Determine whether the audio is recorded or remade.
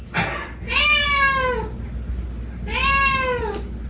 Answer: recorded